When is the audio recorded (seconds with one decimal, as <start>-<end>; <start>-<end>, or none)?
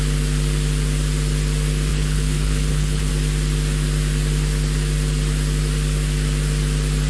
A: 0.0-1.9; 3.1-7.1